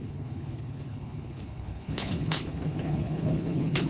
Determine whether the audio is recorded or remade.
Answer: remade